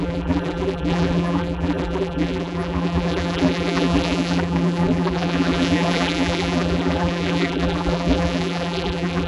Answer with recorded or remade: remade